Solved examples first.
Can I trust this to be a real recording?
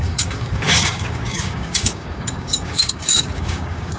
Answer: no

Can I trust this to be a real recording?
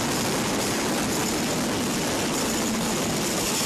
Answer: yes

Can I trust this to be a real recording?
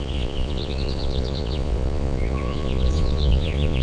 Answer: no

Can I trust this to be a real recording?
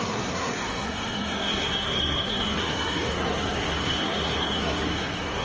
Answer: no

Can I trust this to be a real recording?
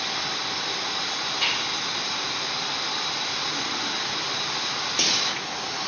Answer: yes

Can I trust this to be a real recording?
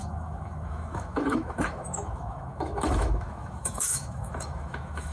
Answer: no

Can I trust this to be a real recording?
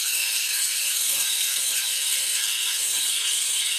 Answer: no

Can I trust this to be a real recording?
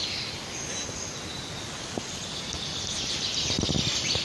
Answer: yes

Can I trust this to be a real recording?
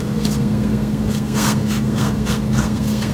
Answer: no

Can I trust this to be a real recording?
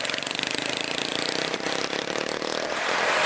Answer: no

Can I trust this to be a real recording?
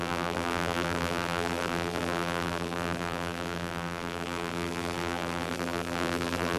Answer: no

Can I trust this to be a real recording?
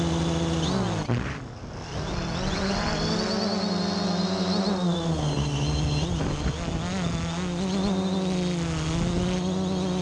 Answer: yes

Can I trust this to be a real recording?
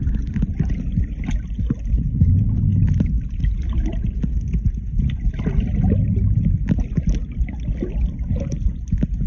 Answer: yes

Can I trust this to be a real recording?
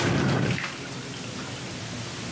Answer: yes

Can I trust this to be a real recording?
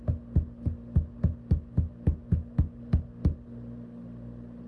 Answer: yes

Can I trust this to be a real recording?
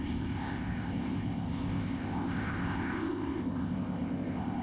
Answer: no